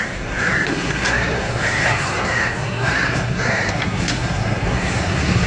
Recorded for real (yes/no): no